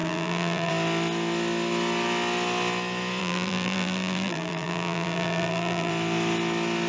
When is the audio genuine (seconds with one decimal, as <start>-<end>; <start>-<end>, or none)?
0.7-3.2; 5.9-6.9